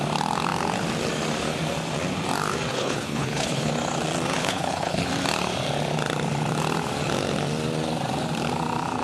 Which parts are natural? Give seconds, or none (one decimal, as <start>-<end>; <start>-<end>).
0.0-2.7; 3.7-4.4; 5.1-9.0